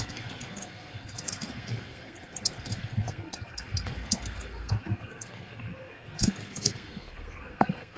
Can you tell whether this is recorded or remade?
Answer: remade